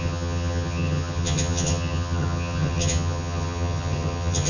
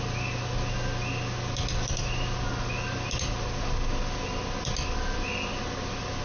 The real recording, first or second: second